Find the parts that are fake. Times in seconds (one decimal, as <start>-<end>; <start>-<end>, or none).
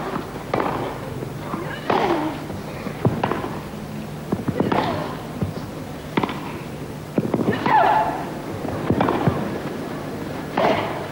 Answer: none